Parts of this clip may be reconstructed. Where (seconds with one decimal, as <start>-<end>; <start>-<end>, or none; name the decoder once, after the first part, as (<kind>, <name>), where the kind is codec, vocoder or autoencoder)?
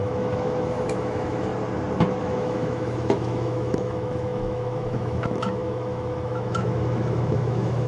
0.0-1.5 (autoencoder, DAC-VAE); 2.2-7.9